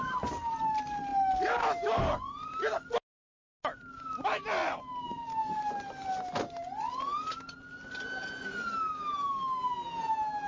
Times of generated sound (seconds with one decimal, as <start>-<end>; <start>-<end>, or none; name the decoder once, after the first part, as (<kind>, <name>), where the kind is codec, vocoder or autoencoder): none